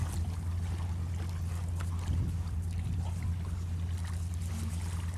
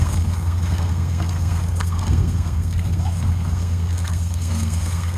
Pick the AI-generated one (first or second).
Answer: second